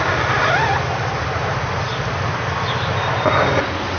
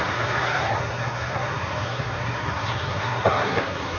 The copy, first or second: second